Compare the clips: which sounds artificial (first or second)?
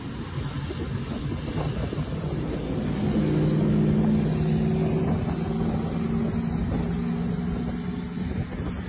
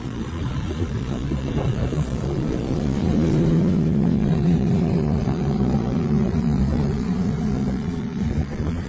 second